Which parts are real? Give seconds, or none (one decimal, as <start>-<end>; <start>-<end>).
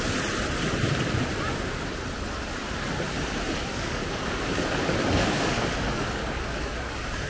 0.0-3.7